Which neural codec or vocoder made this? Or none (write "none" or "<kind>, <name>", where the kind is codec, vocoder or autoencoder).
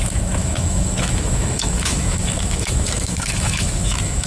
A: autoencoder, DAC-VAE